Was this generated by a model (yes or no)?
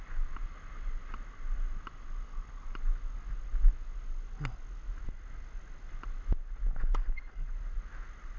no